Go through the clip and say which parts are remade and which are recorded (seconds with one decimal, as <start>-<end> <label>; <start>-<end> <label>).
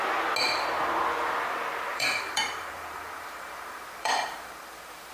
0.0-1.9 recorded; 1.9-5.1 remade